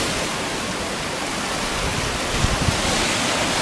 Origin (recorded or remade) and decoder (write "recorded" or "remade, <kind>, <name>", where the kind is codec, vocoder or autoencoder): recorded